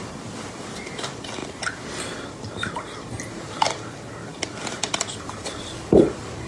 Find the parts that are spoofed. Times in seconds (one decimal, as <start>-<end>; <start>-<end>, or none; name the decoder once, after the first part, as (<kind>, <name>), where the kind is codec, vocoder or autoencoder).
4.3-5.4 (vocoder, BigVGAN v2)